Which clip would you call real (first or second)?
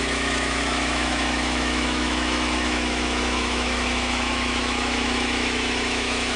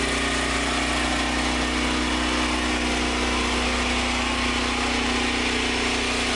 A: second